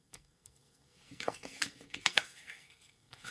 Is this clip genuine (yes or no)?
no